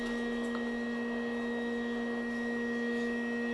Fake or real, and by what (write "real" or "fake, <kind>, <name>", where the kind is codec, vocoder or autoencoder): real